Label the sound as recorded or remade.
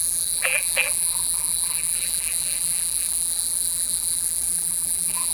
remade